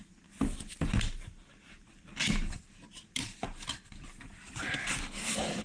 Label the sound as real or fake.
real